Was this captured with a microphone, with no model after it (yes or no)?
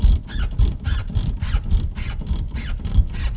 yes